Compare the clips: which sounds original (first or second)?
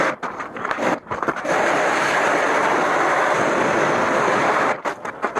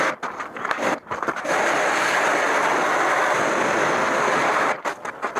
second